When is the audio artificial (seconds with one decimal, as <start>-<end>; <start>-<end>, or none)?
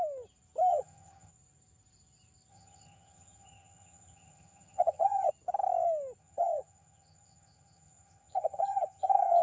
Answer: 0.7-1.3; 2.5-5.3; 6.2-9.4